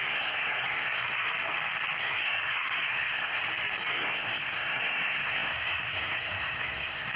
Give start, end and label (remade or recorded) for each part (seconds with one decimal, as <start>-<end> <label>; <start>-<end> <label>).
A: 0.0-1.3 remade; 1.3-2.0 recorded; 2.0-3.4 remade; 3.4-3.9 recorded; 3.9-7.2 remade